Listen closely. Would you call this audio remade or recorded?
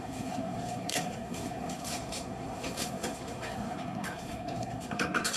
remade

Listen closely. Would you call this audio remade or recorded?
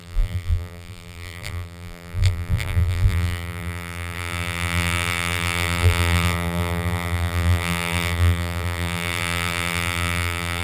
remade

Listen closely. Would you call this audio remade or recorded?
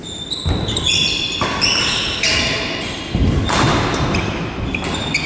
recorded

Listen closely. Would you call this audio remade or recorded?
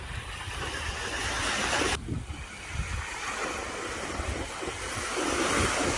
recorded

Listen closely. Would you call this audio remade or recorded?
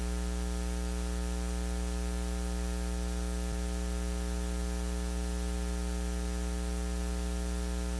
recorded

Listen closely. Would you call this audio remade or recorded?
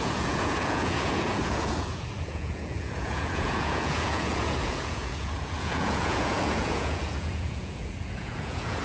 remade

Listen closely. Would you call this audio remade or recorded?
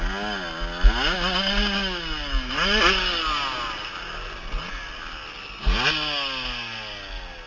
recorded